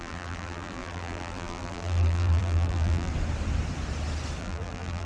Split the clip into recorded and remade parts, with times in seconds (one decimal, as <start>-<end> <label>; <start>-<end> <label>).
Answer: 0.0-3.1 remade; 3.1-4.4 recorded; 4.4-5.1 remade